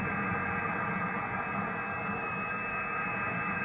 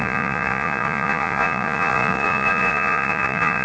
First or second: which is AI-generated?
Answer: second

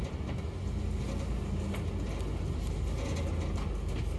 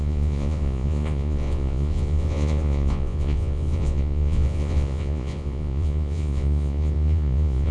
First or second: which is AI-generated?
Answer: second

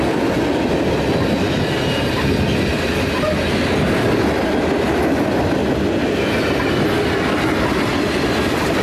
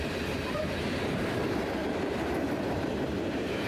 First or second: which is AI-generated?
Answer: second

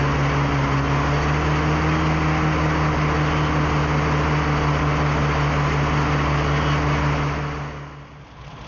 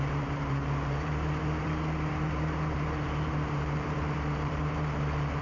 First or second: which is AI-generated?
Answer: second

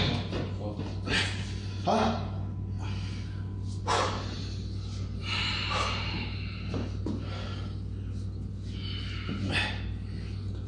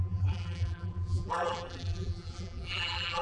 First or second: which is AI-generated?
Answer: second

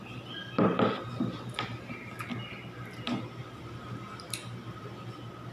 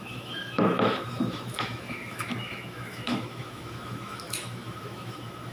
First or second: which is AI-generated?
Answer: second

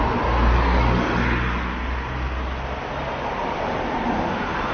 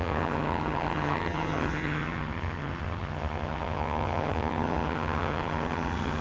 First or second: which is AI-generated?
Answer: second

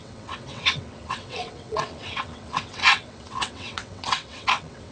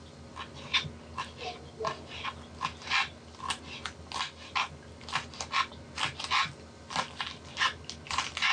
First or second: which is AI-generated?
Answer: first